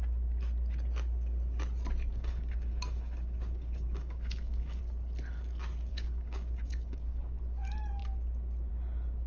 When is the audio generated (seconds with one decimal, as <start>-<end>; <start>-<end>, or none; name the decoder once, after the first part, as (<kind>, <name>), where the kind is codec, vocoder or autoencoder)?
2.1-4.8 (codec, DAC); 5.9-7.4